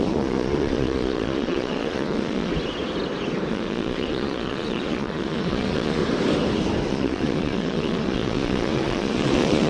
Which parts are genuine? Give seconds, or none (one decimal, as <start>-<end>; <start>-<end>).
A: 2.5-3.5; 6.0-6.9